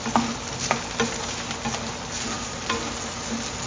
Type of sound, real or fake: real